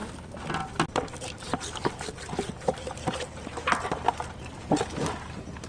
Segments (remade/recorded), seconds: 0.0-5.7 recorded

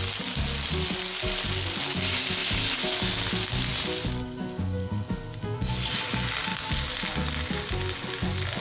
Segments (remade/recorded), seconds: 0.0-8.6 recorded

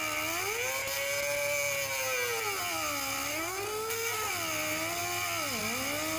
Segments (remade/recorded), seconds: 0.0-3.3 recorded; 3.3-4.3 remade; 4.3-6.2 recorded